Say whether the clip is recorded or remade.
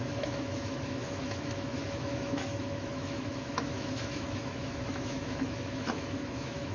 remade